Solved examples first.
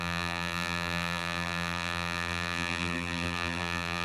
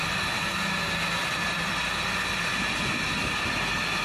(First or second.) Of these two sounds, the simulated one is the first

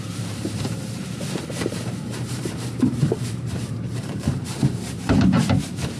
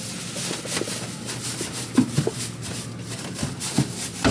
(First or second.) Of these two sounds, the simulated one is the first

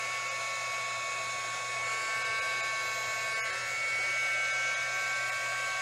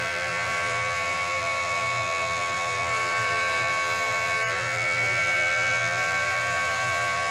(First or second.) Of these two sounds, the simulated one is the second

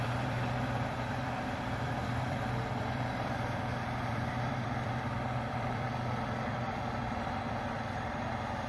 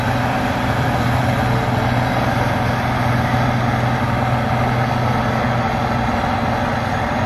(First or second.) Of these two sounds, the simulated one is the first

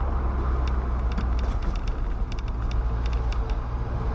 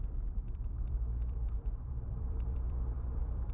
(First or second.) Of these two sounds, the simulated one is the second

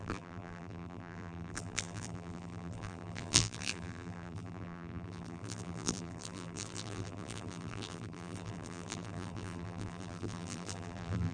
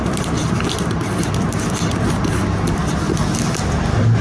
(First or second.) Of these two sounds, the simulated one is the first